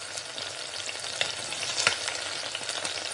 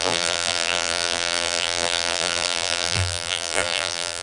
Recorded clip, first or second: first